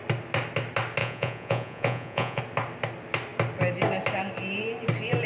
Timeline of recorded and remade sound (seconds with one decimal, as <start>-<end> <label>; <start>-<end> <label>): 0.0-1.0 recorded; 1.0-2.4 remade; 2.4-5.3 recorded